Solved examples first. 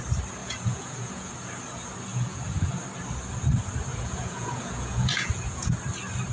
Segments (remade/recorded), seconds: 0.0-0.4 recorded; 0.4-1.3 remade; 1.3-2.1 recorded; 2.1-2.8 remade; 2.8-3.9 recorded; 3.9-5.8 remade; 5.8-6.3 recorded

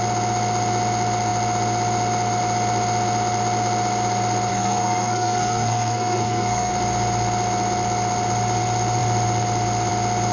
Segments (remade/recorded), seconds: 0.0-4.5 recorded; 4.5-6.7 remade; 6.7-10.3 recorded

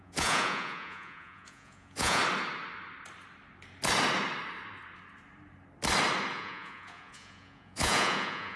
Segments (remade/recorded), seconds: 0.0-2.2 remade; 2.2-6.3 recorded; 6.3-8.6 remade

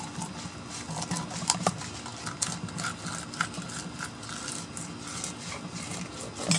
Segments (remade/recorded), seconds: 0.0-6.6 recorded

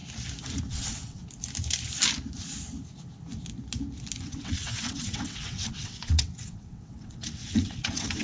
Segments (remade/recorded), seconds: 0.0-0.7 recorded; 0.7-1.2 remade; 1.2-4.2 recorded; 4.2-8.2 remade